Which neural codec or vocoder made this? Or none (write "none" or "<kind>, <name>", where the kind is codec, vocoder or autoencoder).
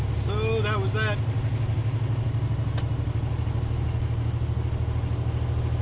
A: none